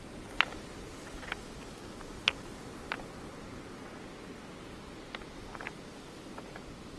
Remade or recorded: recorded